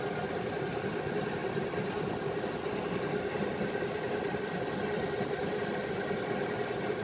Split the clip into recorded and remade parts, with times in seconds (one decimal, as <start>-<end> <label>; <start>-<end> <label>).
0.0-7.0 recorded